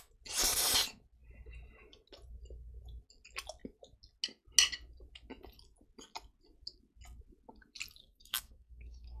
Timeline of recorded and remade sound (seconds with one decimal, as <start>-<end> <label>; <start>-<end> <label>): 0.0-8.0 recorded; 8.0-9.2 remade